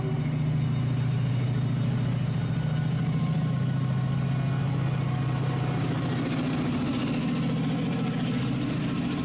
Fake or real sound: real